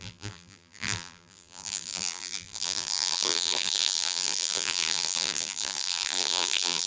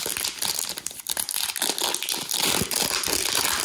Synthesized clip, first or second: first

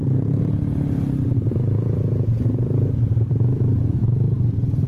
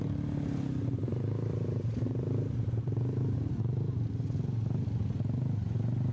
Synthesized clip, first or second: first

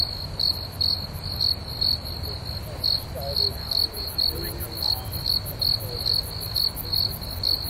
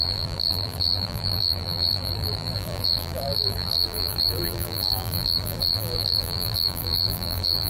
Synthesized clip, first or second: second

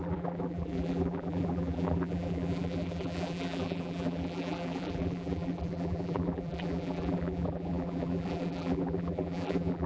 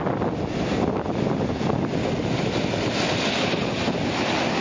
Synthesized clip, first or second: first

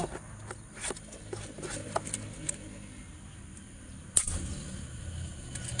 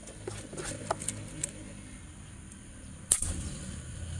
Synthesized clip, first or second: second